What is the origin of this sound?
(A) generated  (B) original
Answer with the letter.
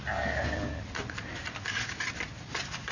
B